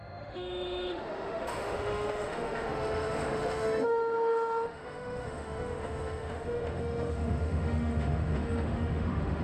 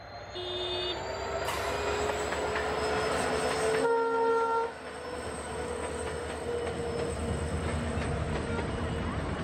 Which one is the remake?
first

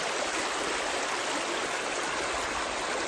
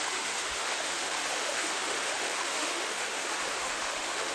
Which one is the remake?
second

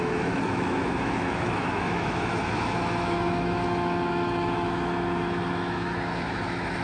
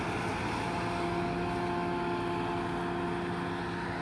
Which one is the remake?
first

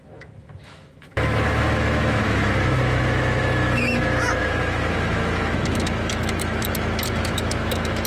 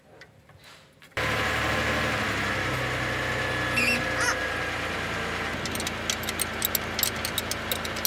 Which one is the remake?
first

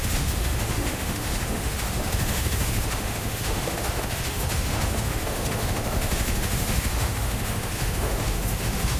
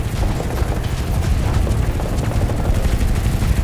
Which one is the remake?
first